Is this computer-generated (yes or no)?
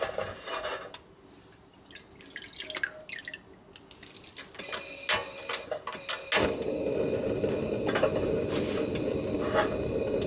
no